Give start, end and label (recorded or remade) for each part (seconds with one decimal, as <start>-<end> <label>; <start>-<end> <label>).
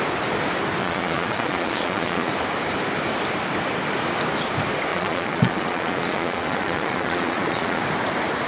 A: 0.0-0.8 recorded; 0.8-2.3 remade; 2.3-4.9 recorded; 4.9-7.8 remade; 7.8-8.5 recorded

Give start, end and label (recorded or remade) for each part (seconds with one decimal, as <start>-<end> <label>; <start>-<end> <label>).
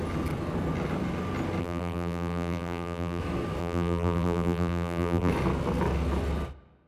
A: 0.0-1.6 recorded; 1.6-3.2 remade; 3.2-3.6 recorded; 3.6-5.3 remade; 5.3-6.9 recorded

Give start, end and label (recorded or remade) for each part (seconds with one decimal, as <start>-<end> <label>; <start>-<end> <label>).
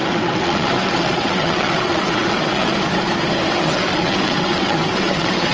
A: 0.0-2.7 remade; 2.7-3.5 recorded; 3.5-5.5 remade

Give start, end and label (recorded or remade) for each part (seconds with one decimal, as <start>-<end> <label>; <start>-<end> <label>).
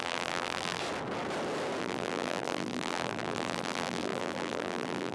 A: 0.0-0.8 remade; 0.8-1.8 recorded; 1.8-5.1 remade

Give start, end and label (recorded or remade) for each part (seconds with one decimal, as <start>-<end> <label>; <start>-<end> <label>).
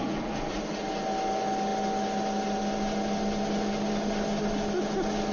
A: 0.0-0.6 remade; 0.6-5.3 recorded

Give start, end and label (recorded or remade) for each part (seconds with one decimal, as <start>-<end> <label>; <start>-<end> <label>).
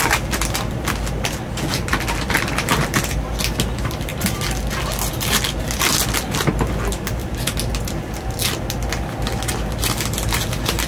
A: 0.0-10.9 recorded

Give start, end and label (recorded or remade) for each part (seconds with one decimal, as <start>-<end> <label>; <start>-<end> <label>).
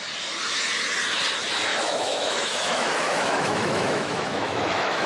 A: 0.0-1.7 recorded; 1.7-5.1 remade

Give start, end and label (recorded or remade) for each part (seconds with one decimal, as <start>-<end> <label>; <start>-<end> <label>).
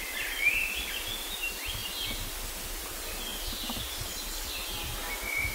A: 0.0-5.5 recorded